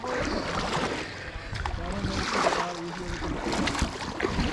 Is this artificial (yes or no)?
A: no